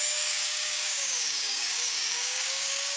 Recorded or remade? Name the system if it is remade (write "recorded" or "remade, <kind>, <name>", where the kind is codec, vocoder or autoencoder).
remade, codec, DAC